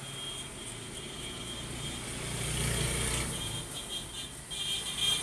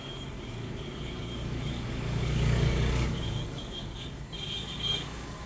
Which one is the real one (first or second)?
first